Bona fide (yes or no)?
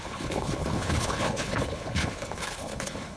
no